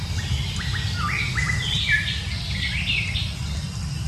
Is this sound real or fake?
real